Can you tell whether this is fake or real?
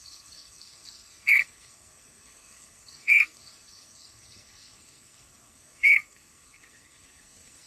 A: fake